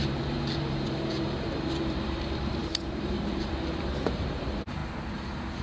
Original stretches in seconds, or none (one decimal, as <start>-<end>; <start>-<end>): 4.8-5.6